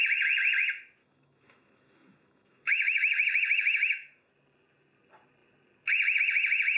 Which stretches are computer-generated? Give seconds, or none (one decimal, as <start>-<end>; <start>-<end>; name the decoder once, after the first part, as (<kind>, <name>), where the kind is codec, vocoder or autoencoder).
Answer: 1.0-4.3 (autoencoder, DAC-VAE)